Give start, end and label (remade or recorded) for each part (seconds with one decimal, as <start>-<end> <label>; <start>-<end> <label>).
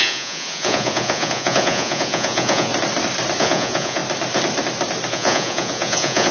0.0-2.7 remade; 2.7-3.4 recorded; 3.4-4.0 remade; 4.0-5.1 recorded; 5.1-6.3 remade